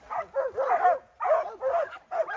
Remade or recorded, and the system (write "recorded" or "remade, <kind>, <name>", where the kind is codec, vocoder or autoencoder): recorded